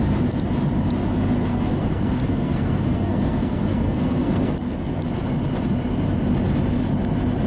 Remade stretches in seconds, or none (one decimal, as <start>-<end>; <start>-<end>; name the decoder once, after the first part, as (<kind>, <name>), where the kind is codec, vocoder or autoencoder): 1.5-5.0 (codec, SNAC)